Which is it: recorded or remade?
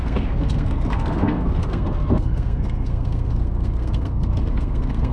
remade